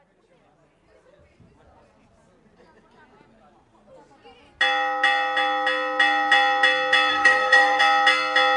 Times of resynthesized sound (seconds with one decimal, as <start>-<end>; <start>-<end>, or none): 7.1-7.8